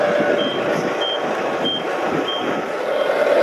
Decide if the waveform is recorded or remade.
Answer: recorded